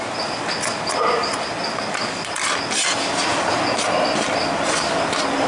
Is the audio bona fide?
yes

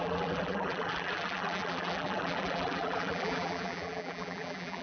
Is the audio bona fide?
no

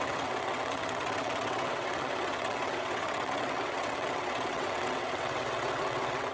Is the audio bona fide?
no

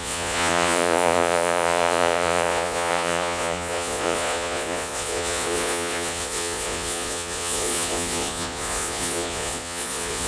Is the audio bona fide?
no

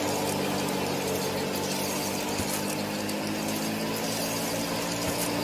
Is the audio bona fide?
yes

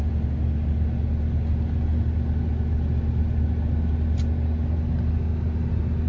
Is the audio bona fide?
yes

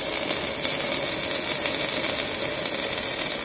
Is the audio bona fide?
yes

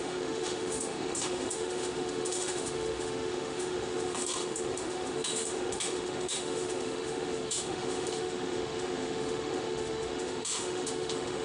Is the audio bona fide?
no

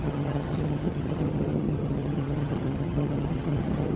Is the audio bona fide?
no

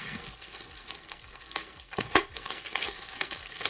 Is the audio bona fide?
no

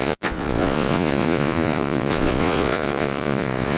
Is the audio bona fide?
no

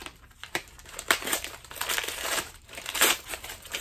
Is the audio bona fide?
no